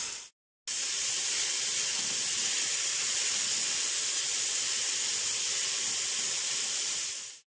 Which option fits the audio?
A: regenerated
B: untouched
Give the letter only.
B